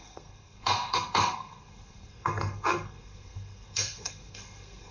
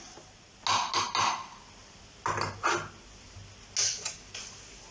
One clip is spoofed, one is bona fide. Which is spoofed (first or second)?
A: first